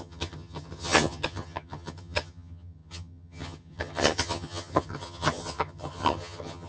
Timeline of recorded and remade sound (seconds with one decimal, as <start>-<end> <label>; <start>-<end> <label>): 0.0-6.7 remade